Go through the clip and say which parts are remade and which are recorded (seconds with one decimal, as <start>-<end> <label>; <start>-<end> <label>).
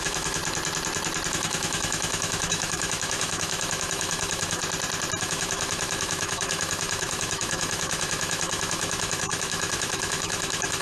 0.0-0.4 remade; 0.4-1.3 recorded; 1.3-4.6 remade; 4.6-5.2 recorded; 5.2-10.8 remade